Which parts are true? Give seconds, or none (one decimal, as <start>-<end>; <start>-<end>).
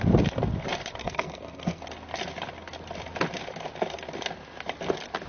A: 0.0-1.0; 1.8-5.3